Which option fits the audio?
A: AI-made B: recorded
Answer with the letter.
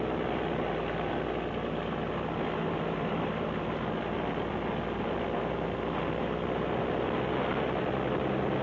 B